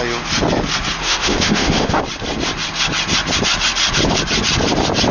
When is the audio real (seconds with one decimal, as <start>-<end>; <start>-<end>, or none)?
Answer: 0.0-1.0; 2.0-5.1